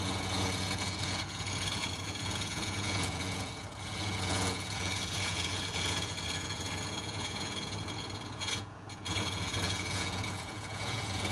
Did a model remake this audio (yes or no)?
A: yes